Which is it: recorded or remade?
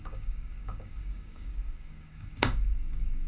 remade